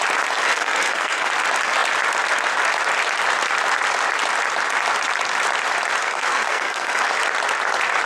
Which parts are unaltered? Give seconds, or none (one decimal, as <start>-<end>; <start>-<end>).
0.0-0.4; 1.3-6.0; 7.0-8.1